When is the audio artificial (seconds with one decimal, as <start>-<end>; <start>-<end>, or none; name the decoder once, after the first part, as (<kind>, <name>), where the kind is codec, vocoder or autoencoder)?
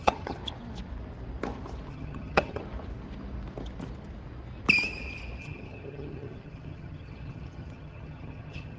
0.0-0.4 (vocoder, HiFi-GAN); 1.9-2.6; 5.4-8.8